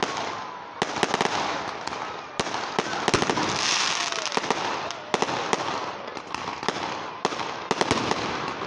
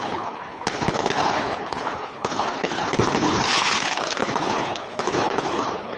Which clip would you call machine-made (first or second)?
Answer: second